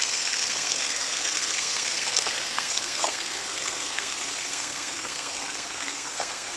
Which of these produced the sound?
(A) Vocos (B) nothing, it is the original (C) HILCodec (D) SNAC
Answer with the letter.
D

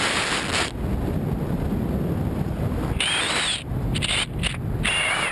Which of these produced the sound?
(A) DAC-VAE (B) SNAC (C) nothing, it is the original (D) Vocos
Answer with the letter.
C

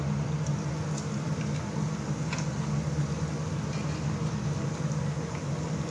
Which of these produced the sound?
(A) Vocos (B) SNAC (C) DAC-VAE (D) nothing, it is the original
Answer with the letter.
D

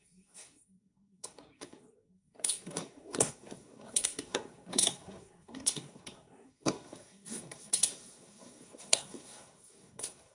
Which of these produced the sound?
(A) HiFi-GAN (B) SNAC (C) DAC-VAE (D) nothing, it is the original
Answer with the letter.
B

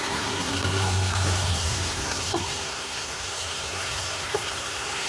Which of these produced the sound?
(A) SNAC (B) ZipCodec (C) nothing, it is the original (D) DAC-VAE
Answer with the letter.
A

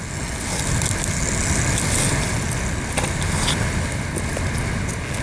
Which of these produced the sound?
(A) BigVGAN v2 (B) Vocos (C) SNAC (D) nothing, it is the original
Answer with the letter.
D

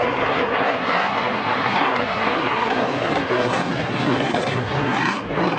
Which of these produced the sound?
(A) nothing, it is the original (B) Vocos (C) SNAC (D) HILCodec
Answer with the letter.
C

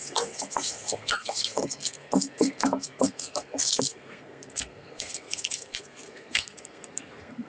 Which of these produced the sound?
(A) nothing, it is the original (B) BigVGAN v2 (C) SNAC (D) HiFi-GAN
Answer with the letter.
C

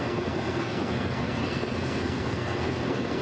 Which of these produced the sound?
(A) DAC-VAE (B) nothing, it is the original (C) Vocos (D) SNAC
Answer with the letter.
D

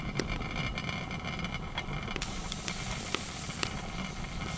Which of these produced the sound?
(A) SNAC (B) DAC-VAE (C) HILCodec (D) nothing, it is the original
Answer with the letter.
D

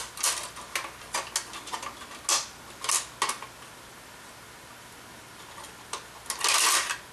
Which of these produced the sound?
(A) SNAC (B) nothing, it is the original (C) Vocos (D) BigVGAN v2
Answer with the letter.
B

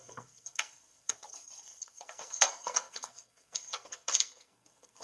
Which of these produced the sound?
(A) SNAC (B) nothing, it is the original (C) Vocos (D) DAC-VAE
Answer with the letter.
A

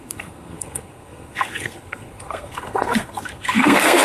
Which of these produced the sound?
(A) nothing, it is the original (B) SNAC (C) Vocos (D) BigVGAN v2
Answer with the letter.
B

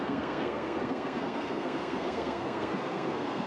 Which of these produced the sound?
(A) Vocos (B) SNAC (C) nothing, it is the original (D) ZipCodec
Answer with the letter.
B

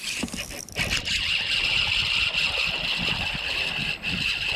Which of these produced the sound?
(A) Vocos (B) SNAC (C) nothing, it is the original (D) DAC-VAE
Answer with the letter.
C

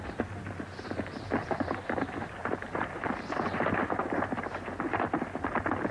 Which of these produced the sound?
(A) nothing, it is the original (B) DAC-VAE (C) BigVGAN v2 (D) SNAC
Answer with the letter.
A